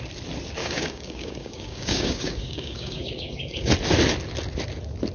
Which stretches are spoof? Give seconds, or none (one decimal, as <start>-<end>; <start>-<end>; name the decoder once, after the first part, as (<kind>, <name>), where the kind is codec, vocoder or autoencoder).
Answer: 0.6-3.7 (codec, DAC)